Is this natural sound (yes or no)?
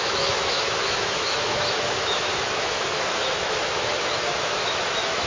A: no